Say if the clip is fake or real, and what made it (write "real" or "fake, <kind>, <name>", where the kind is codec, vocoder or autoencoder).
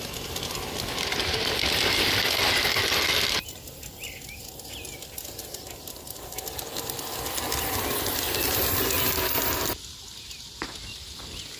real